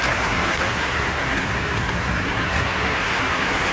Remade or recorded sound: remade